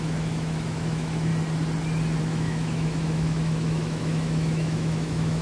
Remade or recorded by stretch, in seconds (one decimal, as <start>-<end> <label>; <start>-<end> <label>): 0.0-1.3 remade; 1.3-2.2 recorded; 2.2-5.4 remade